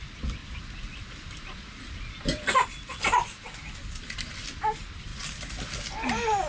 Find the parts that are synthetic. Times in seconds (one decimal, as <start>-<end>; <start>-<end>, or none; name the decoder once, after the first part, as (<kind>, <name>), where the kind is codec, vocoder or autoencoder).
0.4-4.3 (vocoder, BigVGAN v2); 5.1-5.8